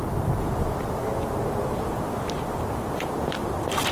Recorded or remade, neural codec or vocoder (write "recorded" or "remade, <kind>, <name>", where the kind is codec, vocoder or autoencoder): recorded